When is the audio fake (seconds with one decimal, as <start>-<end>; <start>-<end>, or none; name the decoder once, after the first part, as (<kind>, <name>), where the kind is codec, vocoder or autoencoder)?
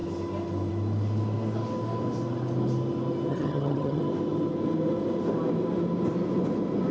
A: 3.3-4.0 (vocoder, HiFi-GAN)